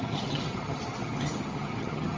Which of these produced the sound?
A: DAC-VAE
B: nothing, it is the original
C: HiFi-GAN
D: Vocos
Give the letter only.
C